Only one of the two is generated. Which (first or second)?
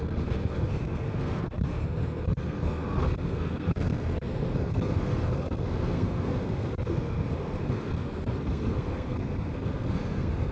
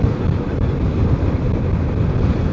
first